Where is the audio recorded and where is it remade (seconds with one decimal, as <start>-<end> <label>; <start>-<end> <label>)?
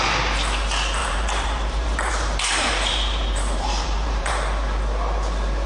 0.0-1.0 recorded; 1.0-4.3 remade; 4.3-5.7 recorded